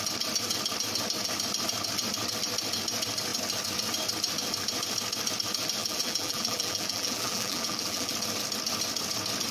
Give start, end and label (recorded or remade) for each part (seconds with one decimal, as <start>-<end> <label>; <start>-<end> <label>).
0.0-5.8 recorded; 5.8-8.1 remade; 8.1-9.5 recorded